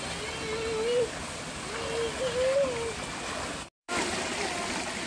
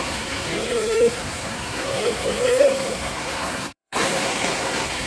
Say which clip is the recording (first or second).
first